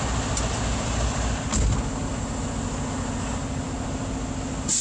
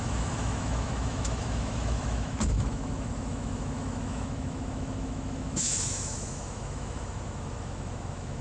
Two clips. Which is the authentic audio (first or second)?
first